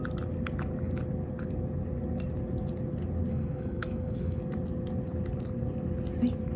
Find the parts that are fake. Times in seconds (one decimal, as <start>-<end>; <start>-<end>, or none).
3.3-4.4